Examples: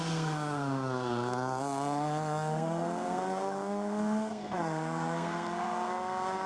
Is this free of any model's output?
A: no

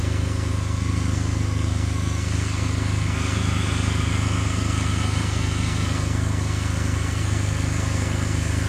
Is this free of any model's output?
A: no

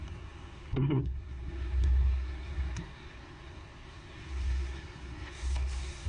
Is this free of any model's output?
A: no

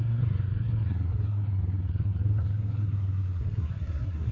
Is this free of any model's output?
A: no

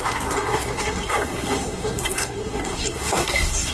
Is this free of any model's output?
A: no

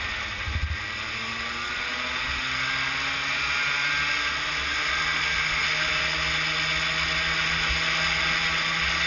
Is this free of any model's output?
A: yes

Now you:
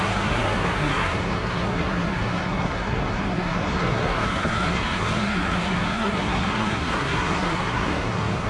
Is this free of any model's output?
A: no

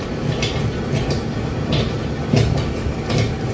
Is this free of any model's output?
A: yes